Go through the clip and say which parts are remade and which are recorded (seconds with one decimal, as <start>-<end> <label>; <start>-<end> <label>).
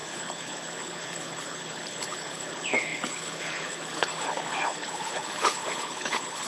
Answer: 0.0-6.5 remade